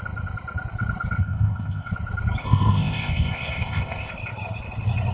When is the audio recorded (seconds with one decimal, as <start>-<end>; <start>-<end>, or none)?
0.0-1.2; 1.9-2.4; 4.1-5.1